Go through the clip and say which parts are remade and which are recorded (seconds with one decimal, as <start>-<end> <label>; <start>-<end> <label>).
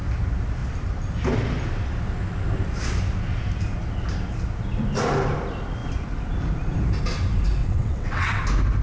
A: 0.0-7.6 recorded; 7.6-8.4 remade; 8.4-8.8 recorded